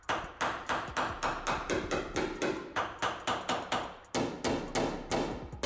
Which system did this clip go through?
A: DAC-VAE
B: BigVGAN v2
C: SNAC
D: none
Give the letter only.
D